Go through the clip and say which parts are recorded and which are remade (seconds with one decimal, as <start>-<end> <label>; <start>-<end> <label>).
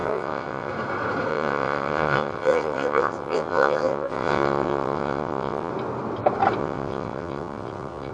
0.0-0.7 remade; 0.7-1.3 recorded; 1.3-5.7 remade; 5.7-6.6 recorded; 6.6-8.1 remade